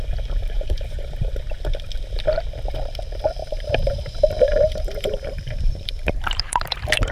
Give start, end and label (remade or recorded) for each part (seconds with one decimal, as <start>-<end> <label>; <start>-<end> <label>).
0.0-0.4 recorded; 0.4-1.1 remade; 1.1-3.4 recorded; 3.4-7.1 remade